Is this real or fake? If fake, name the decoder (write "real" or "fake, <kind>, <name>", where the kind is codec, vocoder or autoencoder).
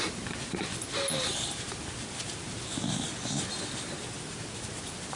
real